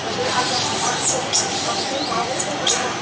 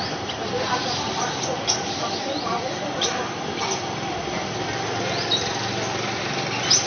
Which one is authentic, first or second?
first